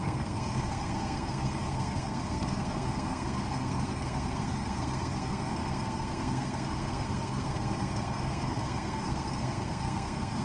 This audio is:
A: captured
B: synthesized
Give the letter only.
B